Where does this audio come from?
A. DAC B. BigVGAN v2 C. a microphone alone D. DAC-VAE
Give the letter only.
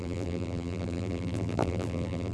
B